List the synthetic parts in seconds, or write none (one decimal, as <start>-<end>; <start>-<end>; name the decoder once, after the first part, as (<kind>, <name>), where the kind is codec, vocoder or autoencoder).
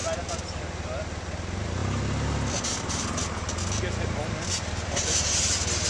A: none